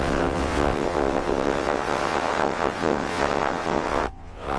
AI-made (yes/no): yes